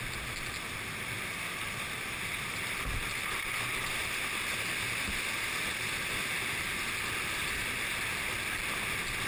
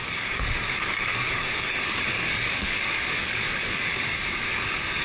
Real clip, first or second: first